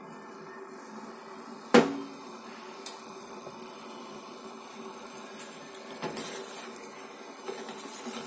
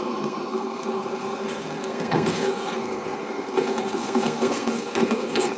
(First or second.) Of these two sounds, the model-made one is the second